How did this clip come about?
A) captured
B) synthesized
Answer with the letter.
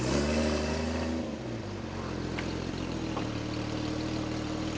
A